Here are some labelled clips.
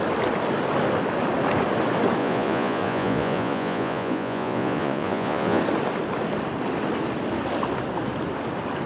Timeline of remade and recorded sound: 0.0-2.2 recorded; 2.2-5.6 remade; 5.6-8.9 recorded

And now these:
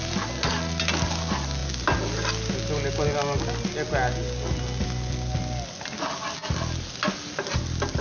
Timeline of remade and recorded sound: 0.0-8.0 recorded

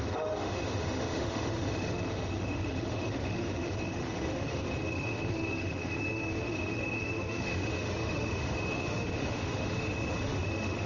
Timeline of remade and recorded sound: 0.0-10.9 remade

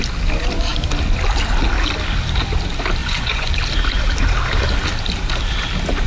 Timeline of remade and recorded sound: 0.0-3.0 recorded; 3.0-3.5 remade; 3.5-6.1 recorded

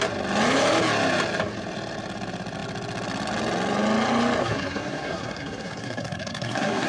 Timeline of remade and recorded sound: 0.0-4.4 recorded; 4.4-6.9 remade